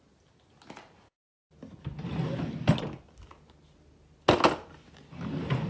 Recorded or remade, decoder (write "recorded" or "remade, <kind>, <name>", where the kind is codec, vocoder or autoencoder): recorded